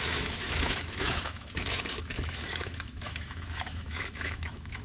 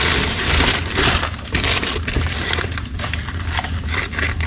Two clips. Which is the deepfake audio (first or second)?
first